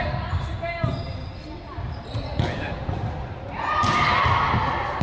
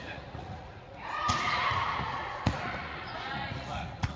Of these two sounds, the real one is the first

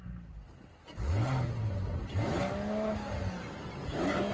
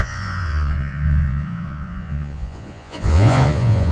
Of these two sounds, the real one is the first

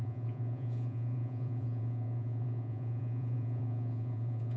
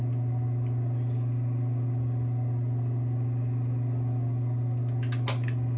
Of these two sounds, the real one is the second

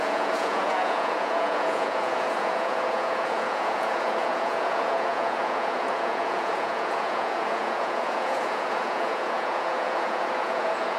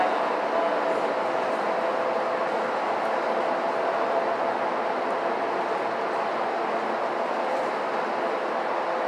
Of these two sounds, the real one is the second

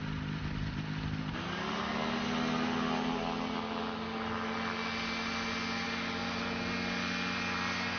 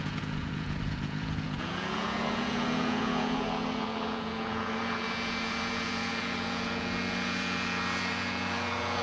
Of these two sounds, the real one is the first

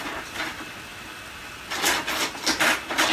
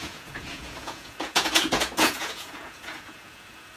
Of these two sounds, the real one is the first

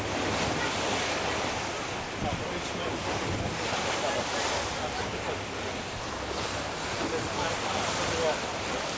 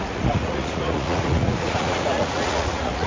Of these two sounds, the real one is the first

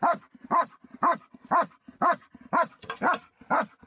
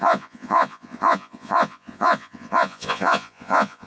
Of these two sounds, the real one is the first